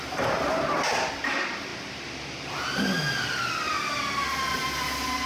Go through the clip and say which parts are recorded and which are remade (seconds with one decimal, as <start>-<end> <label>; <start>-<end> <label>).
0.0-5.3 recorded

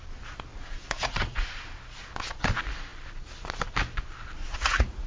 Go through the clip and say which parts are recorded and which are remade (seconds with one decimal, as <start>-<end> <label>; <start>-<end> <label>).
0.0-0.5 recorded; 0.5-1.5 remade; 1.5-4.4 recorded; 4.4-5.1 remade

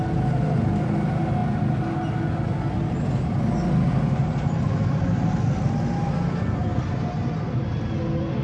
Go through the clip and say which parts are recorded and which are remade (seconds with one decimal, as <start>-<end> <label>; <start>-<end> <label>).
0.0-8.4 recorded